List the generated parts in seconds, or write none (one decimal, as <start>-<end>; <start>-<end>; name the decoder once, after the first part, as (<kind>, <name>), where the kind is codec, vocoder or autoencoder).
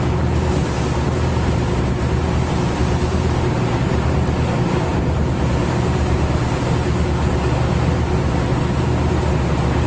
1.3-6.6 (vocoder, BigVGAN v2)